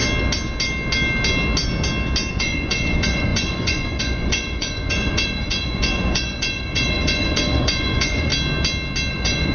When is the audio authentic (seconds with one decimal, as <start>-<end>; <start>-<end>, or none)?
0.0-2.3; 8.3-9.1